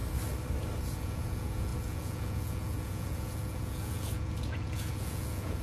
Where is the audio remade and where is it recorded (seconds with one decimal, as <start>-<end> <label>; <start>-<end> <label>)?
0.0-0.8 recorded; 0.8-5.6 remade